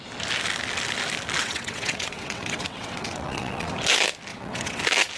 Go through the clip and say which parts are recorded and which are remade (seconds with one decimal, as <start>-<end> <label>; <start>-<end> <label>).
0.0-1.4 recorded; 1.4-3.7 remade; 3.7-4.3 recorded; 4.3-4.8 remade; 4.8-5.2 recorded